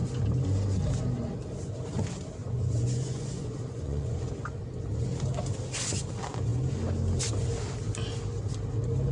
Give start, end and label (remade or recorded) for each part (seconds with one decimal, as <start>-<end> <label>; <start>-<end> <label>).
0.0-2.4 recorded; 2.4-4.3 remade; 4.3-9.1 recorded